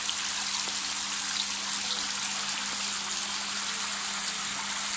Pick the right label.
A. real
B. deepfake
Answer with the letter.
A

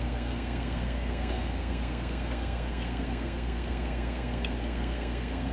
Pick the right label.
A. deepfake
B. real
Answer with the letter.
A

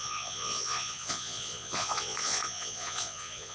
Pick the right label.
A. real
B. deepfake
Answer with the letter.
B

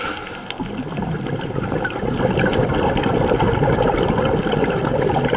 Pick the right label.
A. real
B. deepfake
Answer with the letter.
A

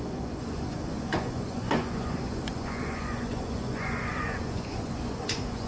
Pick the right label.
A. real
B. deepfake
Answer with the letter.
B